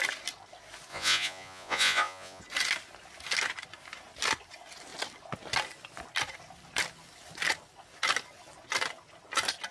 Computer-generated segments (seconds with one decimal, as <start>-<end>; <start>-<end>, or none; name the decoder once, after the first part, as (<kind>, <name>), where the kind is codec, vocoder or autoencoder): 0.9-2.4 (vocoder, Vocos)